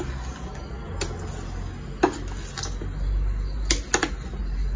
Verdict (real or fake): real